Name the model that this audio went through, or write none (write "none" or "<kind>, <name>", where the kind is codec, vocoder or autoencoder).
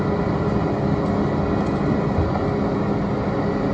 none